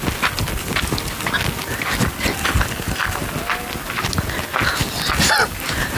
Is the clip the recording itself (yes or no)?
yes